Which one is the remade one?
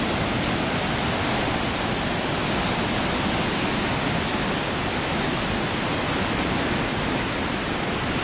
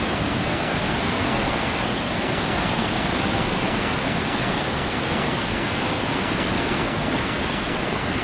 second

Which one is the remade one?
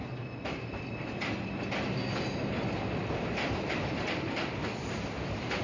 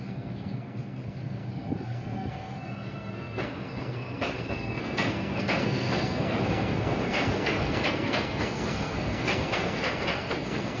second